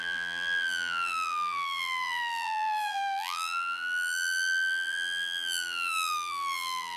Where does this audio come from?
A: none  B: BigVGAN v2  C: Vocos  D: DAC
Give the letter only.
B